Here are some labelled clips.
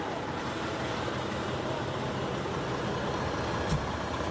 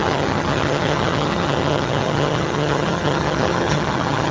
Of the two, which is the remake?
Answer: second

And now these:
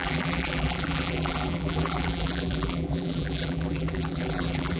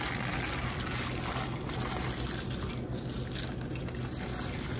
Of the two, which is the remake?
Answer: first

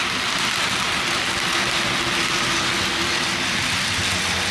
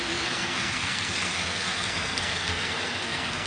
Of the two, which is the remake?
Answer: second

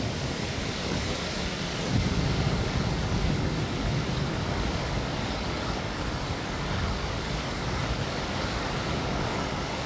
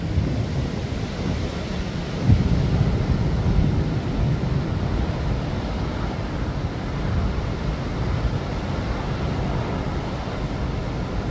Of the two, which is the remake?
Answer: first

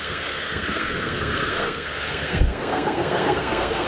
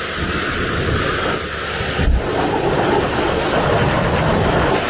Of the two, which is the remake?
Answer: first